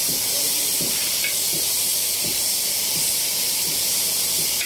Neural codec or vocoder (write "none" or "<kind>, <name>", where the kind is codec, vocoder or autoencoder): vocoder, BigVGAN v2